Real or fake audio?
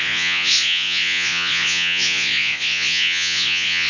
fake